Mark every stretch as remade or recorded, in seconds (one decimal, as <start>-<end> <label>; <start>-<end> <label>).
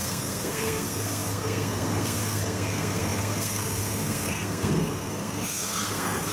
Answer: 0.0-6.3 remade